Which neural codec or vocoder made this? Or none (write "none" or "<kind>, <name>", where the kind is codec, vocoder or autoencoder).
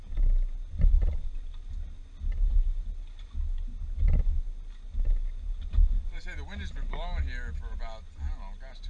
none